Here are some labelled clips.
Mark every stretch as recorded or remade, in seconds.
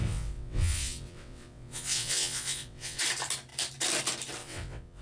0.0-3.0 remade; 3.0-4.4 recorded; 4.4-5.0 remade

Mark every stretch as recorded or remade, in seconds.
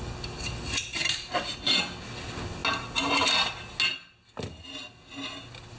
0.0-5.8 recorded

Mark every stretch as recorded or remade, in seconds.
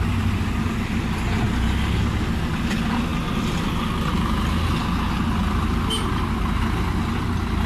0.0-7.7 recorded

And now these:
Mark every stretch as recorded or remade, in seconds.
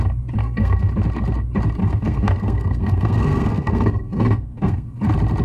0.0-0.4 recorded; 0.4-0.9 remade; 0.9-1.8 recorded; 1.8-5.0 remade; 5.0-5.4 recorded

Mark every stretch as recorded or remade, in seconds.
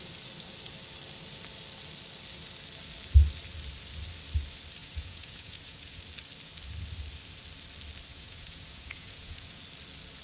0.0-4.8 recorded; 4.8-6.0 remade; 6.0-8.1 recorded; 8.1-9.6 remade; 9.6-10.2 recorded